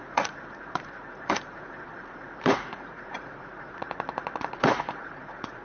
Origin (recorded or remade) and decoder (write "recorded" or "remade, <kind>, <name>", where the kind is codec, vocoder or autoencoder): remade, vocoder, Vocos